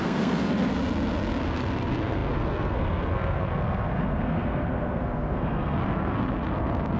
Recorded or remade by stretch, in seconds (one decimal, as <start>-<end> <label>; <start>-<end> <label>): 0.0-0.7 remade; 0.7-1.4 recorded; 1.4-7.0 remade